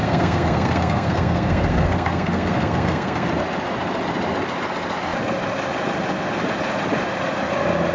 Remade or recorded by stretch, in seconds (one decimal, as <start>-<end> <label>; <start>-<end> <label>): 0.0-3.3 remade; 3.3-7.9 recorded